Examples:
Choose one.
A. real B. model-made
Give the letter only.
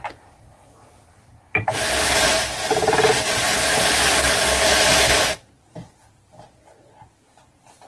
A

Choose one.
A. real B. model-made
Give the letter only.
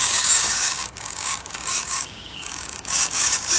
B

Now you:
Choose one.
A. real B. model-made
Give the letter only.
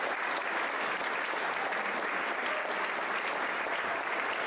A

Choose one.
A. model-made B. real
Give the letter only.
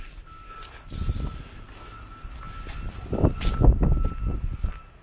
B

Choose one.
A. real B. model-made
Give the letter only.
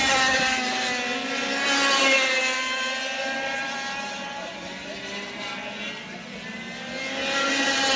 A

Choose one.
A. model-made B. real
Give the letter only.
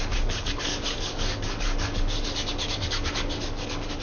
A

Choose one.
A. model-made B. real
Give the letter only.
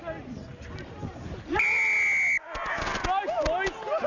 B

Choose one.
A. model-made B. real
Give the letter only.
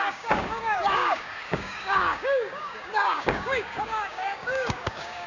A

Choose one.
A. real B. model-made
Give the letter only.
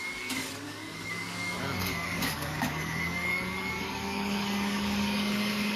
B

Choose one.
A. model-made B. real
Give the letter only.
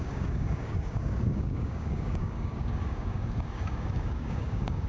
A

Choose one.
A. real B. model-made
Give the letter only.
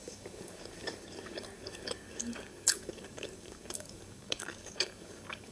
B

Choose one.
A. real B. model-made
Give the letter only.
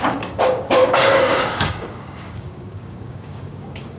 B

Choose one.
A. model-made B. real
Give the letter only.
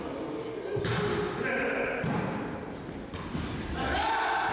B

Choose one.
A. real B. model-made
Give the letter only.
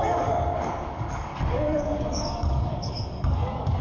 B